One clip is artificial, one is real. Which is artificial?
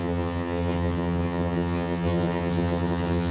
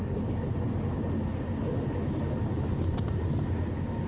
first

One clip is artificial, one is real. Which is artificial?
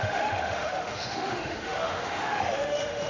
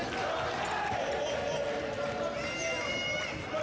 first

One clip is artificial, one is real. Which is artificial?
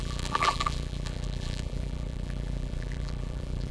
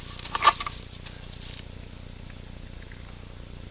first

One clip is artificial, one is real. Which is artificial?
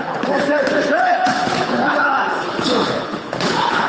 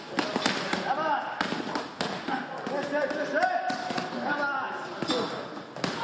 first